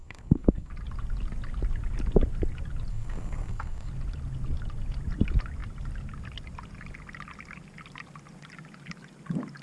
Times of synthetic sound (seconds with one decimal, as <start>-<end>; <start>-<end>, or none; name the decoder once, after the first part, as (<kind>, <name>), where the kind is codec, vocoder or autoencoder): 0.0-0.7 (codec, SNAC); 2.9-3.9